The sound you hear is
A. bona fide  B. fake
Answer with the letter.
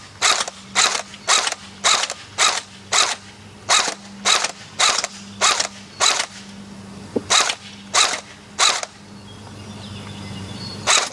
A